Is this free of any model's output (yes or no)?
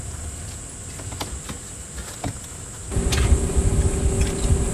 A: yes